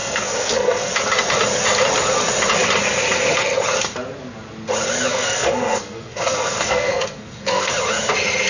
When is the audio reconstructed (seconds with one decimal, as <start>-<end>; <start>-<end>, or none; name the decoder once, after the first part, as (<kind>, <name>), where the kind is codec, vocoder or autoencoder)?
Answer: 0.0-0.9 (codec, SNAC); 5.1-7.7